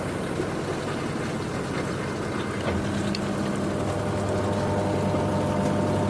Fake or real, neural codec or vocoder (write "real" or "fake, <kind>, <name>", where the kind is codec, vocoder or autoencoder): real